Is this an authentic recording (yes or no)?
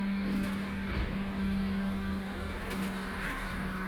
no